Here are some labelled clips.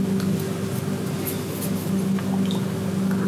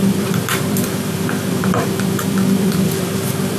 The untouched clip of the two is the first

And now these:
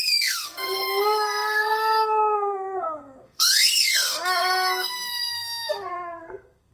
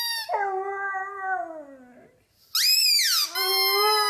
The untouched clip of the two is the second